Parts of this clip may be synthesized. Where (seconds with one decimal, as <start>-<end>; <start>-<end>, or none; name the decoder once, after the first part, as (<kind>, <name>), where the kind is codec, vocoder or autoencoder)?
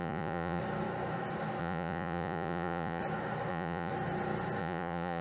0.0-0.6 (vocoder, Vocos); 1.6-3.0; 3.5-3.9; 4.6-5.2